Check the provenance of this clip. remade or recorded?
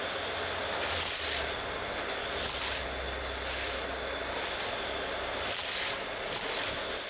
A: recorded